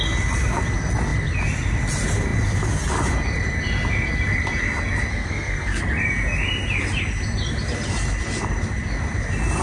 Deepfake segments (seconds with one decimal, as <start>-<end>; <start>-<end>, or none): 5.1-5.8